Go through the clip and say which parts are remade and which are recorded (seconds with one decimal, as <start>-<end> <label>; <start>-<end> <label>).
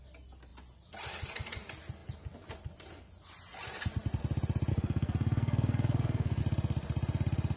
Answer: 0.0-4.7 recorded; 4.7-6.4 remade; 6.4-7.6 recorded